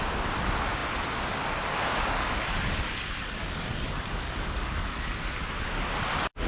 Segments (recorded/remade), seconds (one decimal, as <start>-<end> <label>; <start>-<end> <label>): 0.0-1.9 recorded; 1.9-5.0 remade; 5.0-6.5 recorded